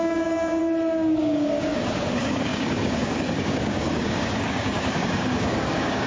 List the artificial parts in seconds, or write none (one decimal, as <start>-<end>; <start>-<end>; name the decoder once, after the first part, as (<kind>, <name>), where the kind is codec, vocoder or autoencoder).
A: 0.0-6.1 (codec, DAC)